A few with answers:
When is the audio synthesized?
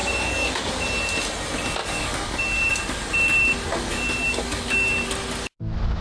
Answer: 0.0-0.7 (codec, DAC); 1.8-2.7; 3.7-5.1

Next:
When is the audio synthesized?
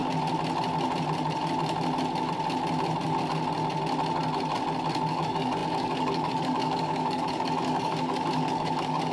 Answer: 5.1-9.1 (codec, DAC)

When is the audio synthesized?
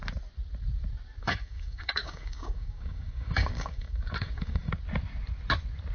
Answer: 1.2-4.7 (codec, DAC)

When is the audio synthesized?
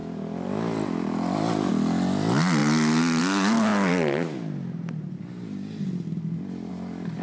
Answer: none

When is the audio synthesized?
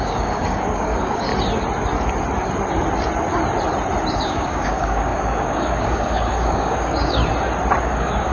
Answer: 0.0-1.3 (codec, DAC); 4.1-7.2; 7.8-8.3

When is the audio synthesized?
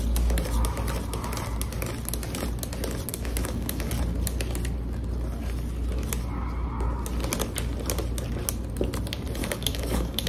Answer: 3.1-3.9 (codec, DAC); 9.4-10.3